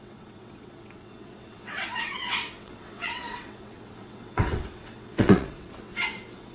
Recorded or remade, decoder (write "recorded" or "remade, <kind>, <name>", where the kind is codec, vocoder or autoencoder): remade, vocoder, WaveNeXt